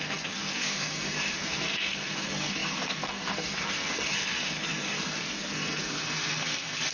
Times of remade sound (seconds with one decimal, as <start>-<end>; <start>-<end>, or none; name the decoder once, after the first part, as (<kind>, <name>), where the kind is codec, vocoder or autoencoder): 0.0-6.9 (codec, SNAC)

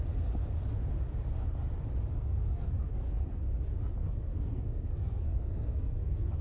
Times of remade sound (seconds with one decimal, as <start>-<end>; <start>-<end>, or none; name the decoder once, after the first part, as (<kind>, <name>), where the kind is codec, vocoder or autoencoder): 2.2-3.4 (codec, SNAC); 4.0-6.4

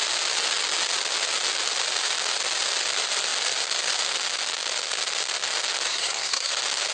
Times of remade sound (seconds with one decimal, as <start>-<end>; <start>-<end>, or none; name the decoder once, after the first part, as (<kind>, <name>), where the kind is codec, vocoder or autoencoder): 5.9-6.5 (codec, SNAC)

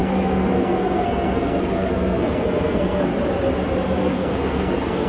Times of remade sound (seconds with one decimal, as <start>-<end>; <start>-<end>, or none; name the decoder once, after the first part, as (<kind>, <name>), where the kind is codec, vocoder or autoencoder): 0.0-3.1 (codec, SNAC); 4.0-5.1

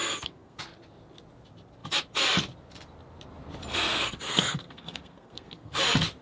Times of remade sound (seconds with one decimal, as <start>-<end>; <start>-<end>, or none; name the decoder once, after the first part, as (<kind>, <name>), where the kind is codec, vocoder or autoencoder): 0.0-0.6 (codec, SNAC); 3.9-5.8

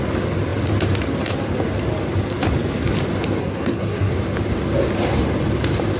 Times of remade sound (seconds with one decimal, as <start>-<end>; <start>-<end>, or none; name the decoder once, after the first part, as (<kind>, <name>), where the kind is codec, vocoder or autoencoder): 3.4-4.1 (codec, SNAC)

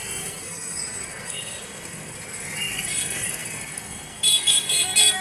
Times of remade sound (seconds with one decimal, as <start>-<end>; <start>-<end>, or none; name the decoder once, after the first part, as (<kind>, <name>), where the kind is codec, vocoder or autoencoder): 0.0-5.2 (codec, SNAC)